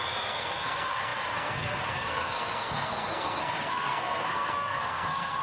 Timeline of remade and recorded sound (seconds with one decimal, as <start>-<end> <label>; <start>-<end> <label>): 0.0-5.4 remade